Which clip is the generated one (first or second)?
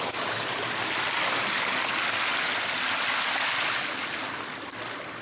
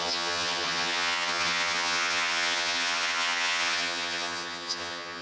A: second